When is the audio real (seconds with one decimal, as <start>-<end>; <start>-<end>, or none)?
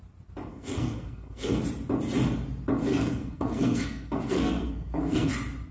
0.0-0.5; 1.6-2.8; 5.3-5.7